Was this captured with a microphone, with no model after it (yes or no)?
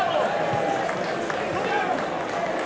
yes